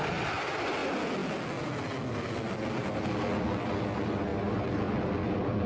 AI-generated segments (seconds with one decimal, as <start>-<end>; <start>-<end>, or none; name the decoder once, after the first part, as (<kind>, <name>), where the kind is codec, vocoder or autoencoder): none